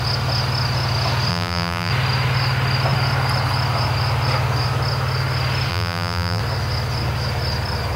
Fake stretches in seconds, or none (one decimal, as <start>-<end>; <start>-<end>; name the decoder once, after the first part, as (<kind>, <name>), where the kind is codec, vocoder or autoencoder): 1.3-1.9 (vocoder, BigVGAN v2); 5.7-6.4